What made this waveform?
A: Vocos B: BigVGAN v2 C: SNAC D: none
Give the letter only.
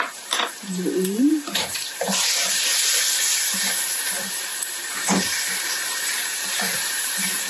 B